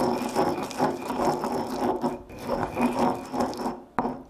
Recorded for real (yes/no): yes